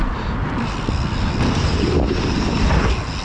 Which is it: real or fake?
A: real